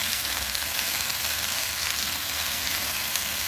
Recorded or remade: remade